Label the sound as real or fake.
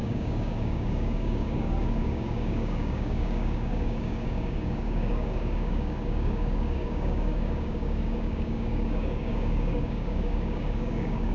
fake